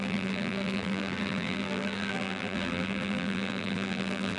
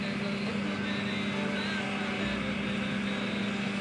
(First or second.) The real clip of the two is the second